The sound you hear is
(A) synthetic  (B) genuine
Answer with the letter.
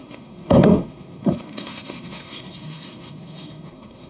A